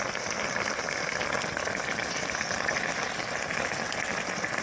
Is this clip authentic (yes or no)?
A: yes